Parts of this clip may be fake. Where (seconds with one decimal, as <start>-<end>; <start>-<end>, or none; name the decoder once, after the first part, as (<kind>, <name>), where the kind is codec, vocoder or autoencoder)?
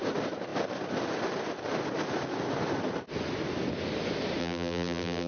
4.4-5.3 (vocoder, BigVGAN v2)